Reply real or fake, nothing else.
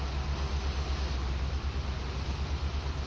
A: real